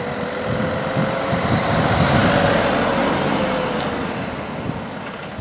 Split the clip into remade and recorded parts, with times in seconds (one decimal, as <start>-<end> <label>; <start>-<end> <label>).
0.0-5.4 recorded